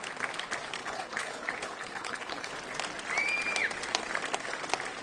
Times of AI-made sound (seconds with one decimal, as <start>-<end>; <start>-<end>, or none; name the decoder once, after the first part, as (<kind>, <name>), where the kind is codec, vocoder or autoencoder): 0.8-2.5 (codec, HILCodec)